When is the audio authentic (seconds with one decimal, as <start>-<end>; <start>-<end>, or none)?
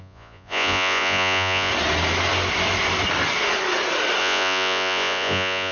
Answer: 1.7-4.2